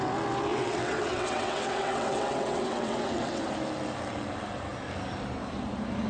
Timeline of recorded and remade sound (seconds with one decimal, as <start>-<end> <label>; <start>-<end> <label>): 0.0-0.5 recorded; 0.5-3.4 remade; 3.4-6.1 recorded